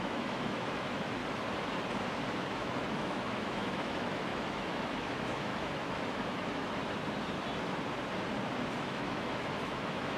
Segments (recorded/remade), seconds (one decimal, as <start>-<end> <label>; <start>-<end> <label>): 0.0-1.2 remade; 1.2-2.3 recorded; 2.3-6.8 remade; 6.8-8.8 recorded; 8.8-10.2 remade